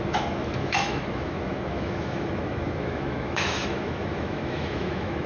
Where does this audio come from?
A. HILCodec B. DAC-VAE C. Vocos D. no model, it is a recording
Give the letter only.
B